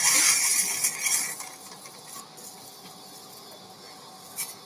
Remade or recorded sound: recorded